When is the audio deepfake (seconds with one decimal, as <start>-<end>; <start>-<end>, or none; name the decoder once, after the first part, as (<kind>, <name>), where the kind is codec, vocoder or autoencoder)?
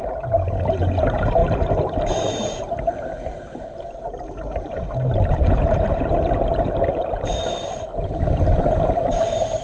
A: 0.0-7.9 (vocoder, BigVGAN v2); 8.6-9.6